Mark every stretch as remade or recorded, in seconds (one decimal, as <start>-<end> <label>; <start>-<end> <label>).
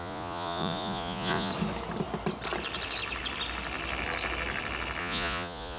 0.0-1.5 remade; 1.5-5.0 recorded; 5.0-5.8 remade